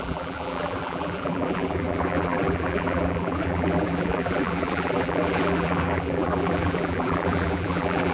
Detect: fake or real fake